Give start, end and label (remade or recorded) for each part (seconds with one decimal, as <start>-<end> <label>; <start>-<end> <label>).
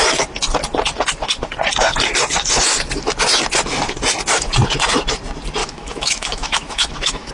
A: 0.0-5.6 recorded; 5.6-7.3 remade